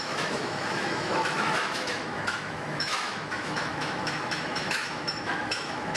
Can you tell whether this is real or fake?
fake